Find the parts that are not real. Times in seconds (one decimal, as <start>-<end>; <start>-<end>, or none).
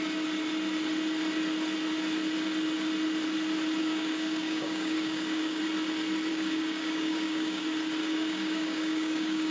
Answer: 3.8-5.6; 6.3-7.6; 8.0-9.5